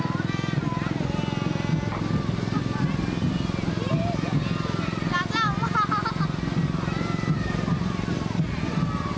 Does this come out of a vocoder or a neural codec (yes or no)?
no